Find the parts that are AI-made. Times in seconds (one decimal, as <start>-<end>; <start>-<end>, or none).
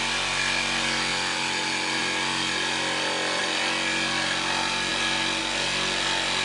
none